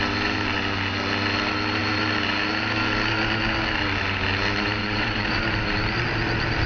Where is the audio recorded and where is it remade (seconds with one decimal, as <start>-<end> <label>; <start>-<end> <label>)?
0.0-4.8 recorded; 4.8-5.4 remade; 5.4-6.7 recorded